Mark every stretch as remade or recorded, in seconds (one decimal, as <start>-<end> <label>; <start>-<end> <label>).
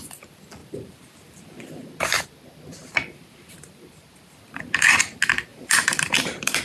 0.0-0.6 recorded; 0.6-2.2 remade; 2.2-2.8 recorded; 2.8-5.1 remade; 5.1-5.5 recorded; 5.5-6.6 remade